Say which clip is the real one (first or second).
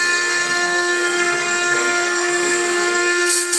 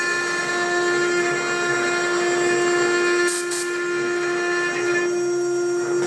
second